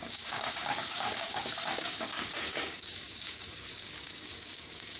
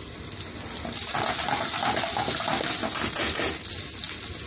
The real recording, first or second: second